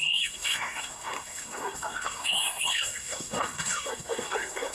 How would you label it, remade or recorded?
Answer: remade